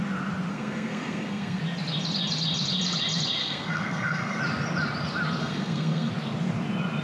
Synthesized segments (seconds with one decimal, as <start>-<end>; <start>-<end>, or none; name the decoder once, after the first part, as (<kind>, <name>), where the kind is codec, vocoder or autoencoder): 0.5-1.6 (codec, SNAC); 3.4-4.4; 5.4-6.1